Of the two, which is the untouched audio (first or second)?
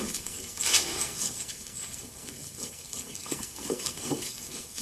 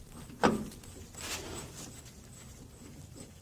second